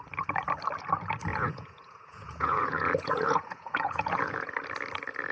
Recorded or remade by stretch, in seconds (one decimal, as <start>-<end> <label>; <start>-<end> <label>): 0.0-1.3 recorded; 1.3-4.5 remade; 4.5-5.3 recorded

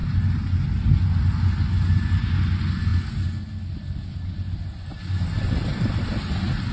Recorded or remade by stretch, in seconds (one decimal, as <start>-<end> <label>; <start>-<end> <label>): 0.0-6.7 recorded

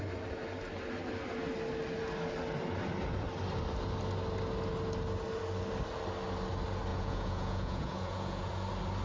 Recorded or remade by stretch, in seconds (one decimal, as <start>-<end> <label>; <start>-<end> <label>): 0.0-6.9 recorded; 6.9-8.5 remade; 8.5-9.0 recorded

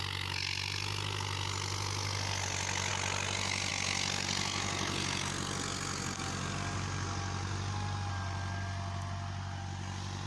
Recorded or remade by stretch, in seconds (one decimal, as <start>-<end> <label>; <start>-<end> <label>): 0.0-10.3 recorded

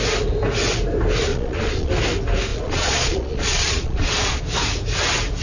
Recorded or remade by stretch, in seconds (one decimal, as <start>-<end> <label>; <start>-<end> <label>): 0.0-1.3 recorded; 1.3-1.9 remade; 1.9-2.5 recorded; 2.5-4.4 remade; 4.4-5.4 recorded